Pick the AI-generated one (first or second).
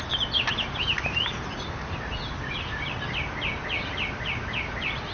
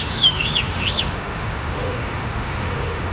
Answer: second